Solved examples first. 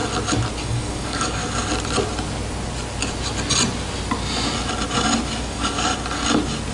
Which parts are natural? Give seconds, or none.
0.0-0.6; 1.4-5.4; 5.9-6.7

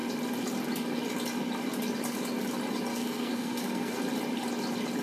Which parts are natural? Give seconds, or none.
0.0-2.9; 4.0-5.0

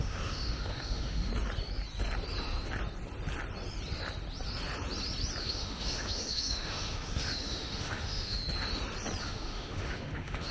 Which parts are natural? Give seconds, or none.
1.3-5.4; 8.4-9.2